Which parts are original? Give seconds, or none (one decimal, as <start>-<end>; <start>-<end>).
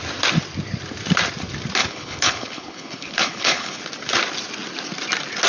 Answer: 0.0-1.8; 3.8-5.5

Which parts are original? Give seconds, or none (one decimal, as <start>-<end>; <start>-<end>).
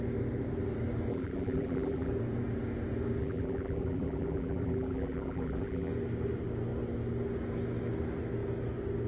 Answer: 0.0-1.1; 2.1-3.2; 5.9-9.1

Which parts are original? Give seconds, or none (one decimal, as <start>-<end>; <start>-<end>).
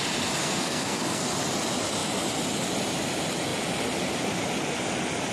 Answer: 0.0-0.4; 1.2-5.3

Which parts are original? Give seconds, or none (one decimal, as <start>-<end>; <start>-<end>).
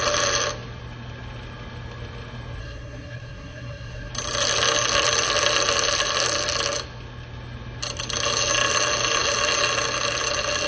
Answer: 0.0-2.6; 4.1-10.7